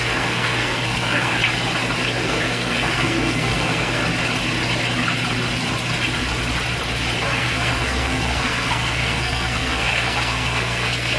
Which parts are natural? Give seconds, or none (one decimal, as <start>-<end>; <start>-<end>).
1.4-2.2; 4.0-7.2